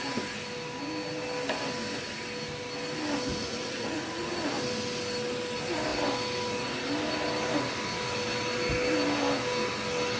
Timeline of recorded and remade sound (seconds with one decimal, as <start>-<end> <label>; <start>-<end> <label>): 0.0-3.4 recorded; 3.4-4.3 remade; 4.3-10.2 recorded

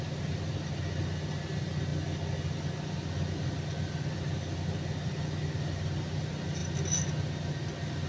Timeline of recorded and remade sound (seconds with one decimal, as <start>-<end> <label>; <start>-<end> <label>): 0.0-8.1 recorded

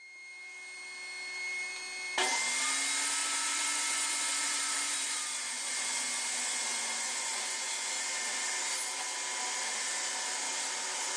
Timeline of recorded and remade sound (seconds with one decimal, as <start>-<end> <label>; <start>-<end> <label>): 0.0-3.2 recorded; 3.2-7.9 remade; 7.9-11.2 recorded

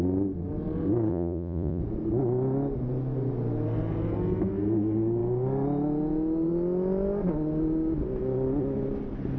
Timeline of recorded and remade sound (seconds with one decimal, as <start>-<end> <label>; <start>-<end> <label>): 0.0-1.1 recorded; 1.1-1.8 remade; 1.8-9.4 recorded

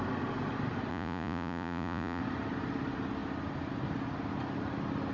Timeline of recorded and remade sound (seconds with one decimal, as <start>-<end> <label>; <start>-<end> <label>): 0.0-0.9 recorded; 0.9-2.2 remade; 2.2-5.1 recorded